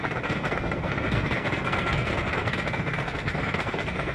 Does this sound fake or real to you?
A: fake